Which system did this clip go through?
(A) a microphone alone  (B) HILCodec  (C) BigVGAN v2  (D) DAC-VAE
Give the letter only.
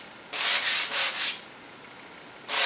A